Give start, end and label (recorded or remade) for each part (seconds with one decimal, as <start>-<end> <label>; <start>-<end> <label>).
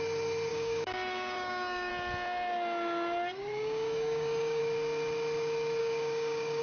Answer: 0.0-0.5 recorded; 0.5-1.9 remade; 1.9-3.5 recorded; 3.5-4.6 remade; 4.6-5.8 recorded; 5.8-6.6 remade